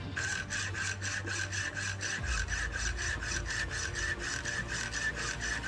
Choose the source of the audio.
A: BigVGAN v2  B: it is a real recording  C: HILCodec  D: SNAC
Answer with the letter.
B